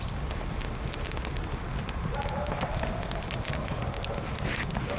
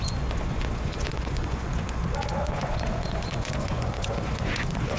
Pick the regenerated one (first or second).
second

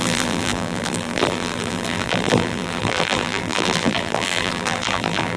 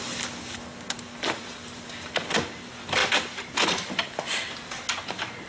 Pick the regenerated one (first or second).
first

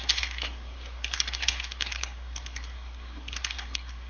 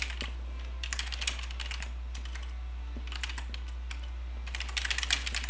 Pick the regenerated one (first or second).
first